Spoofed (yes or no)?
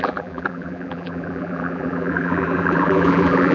yes